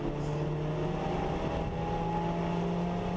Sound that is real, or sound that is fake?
real